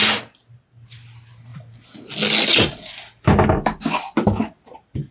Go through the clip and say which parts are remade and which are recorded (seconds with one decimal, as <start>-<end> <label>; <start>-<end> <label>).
0.0-5.1 recorded